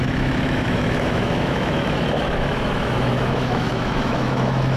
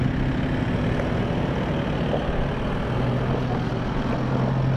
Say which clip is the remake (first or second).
first